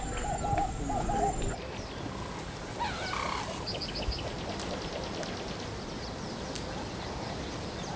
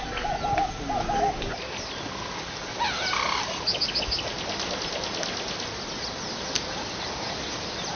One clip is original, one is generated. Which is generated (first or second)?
first